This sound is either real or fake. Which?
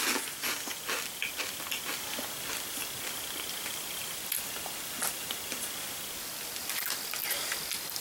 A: real